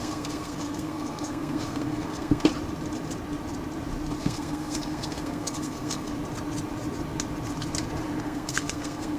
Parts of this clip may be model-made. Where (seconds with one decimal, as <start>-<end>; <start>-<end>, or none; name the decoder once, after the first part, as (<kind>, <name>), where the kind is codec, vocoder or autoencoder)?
0.0-2.5 (codec, SNAC); 4.2-6.1; 8.2-9.2